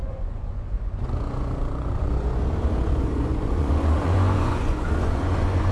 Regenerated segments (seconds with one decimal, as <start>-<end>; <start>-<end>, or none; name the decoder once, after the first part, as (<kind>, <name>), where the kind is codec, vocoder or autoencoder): 0.0-5.7 (vocoder, Vocos)